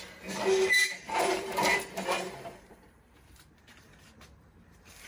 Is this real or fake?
fake